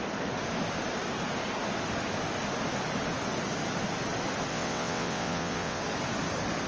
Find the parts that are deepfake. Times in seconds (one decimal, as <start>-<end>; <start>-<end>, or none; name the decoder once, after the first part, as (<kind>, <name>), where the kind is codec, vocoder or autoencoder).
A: 4.5-5.8 (vocoder, WaveNeXt)